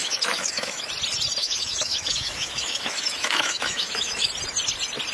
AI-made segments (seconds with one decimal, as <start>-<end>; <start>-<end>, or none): 0.0-0.9; 1.4-4.3